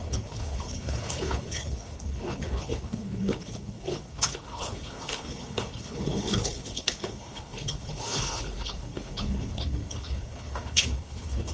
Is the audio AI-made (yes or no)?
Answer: yes